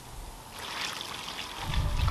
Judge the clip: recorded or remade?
recorded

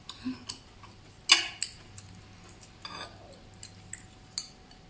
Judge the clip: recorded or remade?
recorded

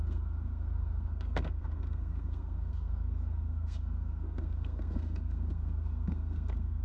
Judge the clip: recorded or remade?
remade